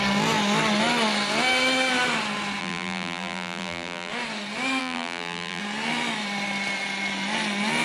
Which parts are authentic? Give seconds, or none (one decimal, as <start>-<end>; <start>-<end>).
0.0-2.6; 4.1-4.8; 5.6-7.8